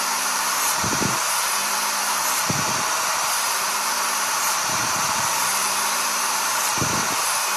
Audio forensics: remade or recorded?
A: remade